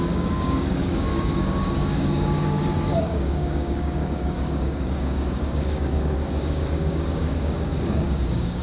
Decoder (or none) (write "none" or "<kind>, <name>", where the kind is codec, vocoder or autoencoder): codec, DAC